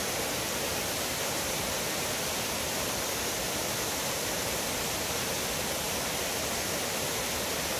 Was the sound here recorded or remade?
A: remade